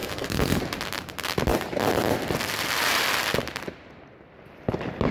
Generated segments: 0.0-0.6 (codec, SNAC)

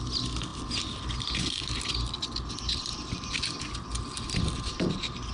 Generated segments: none

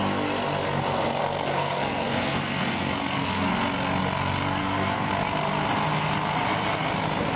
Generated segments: 1.2-3.5 (codec, SNAC); 4.6-5.1